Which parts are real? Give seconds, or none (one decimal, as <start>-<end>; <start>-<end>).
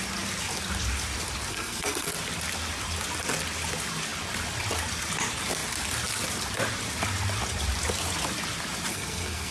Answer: 0.0-1.5; 2.1-8.9